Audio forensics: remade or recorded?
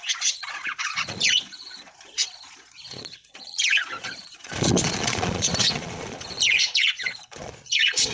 remade